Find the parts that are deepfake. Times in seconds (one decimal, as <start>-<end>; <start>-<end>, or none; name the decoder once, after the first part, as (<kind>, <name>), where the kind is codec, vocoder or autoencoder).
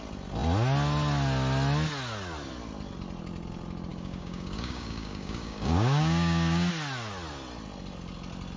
3.9-6.7 (codec, DAC)